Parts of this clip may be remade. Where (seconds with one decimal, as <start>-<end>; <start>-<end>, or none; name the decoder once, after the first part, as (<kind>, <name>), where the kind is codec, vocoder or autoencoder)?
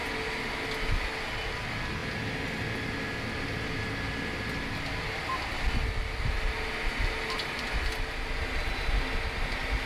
none